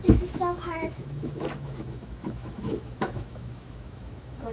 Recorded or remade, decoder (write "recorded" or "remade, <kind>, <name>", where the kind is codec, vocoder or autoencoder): remade, autoencoder, DAC-VAE